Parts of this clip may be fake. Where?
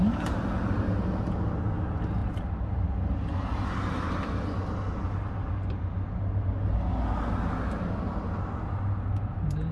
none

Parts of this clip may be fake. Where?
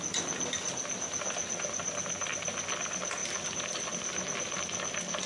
none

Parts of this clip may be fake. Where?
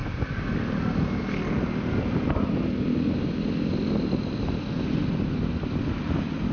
none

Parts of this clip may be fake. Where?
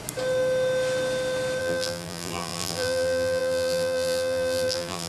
1.6-5.1 (vocoder, BigVGAN v2)